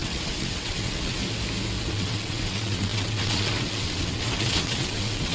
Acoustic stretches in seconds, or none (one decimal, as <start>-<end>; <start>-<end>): 1.2-1.9